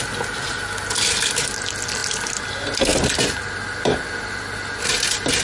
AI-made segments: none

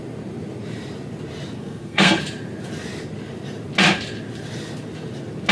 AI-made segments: 1.6-2.2 (codec, SNAC)